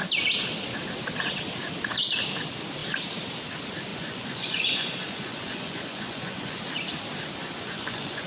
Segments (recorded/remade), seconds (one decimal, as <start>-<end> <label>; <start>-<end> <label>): 0.0-3.9 recorded; 3.9-6.6 remade; 6.6-7.4 recorded; 7.4-8.3 remade